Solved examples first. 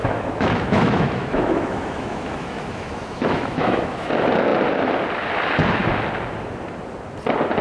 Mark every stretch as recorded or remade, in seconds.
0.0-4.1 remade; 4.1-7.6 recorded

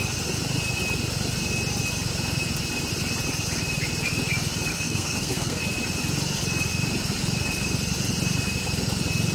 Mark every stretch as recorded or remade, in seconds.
0.0-4.7 recorded; 4.7-5.6 remade; 5.6-9.3 recorded

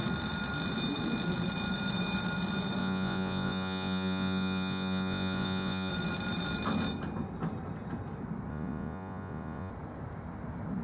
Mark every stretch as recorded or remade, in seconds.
0.0-2.8 recorded; 2.8-5.9 remade; 5.9-8.5 recorded; 8.5-9.7 remade; 9.7-10.8 recorded

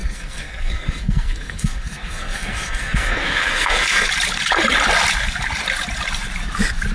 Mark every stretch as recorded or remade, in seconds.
0.0-4.1 remade; 4.1-6.9 recorded